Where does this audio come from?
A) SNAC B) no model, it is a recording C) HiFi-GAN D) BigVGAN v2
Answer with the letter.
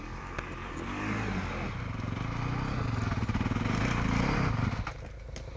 B